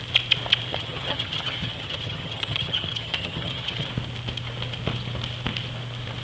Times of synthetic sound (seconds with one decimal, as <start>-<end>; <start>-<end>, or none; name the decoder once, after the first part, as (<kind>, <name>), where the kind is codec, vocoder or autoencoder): 0.7-3.9 (vocoder, HiFi-GAN)